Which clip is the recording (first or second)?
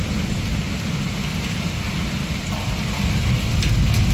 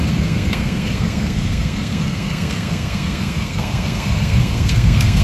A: first